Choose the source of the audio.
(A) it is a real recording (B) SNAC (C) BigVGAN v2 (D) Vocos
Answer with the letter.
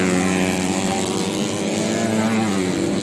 A